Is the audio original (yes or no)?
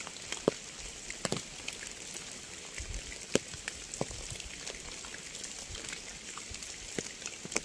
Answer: yes